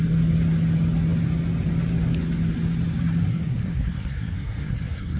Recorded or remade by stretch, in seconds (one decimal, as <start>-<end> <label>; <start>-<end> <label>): 0.0-3.3 recorded; 3.3-5.2 remade